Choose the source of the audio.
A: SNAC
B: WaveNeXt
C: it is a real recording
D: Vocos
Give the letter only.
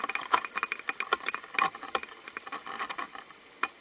C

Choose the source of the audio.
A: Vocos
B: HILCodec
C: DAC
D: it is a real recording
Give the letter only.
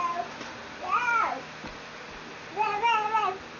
D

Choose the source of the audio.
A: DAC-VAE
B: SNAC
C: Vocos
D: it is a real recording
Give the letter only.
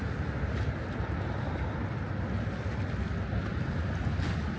D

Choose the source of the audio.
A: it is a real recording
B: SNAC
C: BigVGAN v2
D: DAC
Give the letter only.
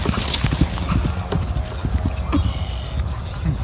A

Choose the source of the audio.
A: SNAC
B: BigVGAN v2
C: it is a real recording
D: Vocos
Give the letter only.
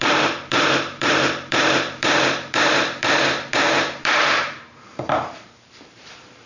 B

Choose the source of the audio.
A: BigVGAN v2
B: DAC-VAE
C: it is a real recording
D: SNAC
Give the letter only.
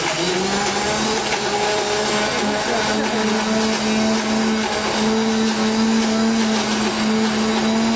C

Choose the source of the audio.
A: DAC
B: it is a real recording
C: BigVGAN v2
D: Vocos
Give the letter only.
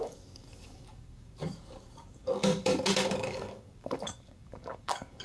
A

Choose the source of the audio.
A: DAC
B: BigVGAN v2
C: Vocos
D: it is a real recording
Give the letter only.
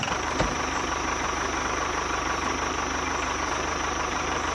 B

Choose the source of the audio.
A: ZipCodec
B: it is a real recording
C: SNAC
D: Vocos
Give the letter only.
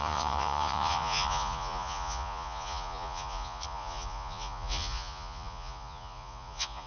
D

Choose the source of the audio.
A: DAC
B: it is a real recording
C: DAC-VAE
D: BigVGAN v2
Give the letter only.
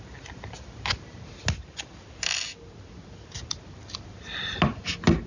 B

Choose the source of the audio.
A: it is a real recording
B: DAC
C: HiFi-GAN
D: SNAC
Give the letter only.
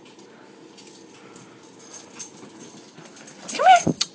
A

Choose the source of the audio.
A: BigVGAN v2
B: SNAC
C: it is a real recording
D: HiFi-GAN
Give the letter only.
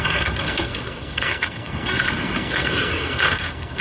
B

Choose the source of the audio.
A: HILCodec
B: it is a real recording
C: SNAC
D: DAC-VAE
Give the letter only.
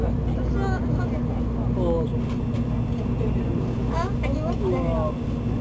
B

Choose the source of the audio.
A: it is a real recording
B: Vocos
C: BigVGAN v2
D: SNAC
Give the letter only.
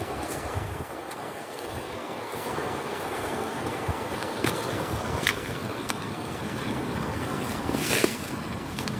D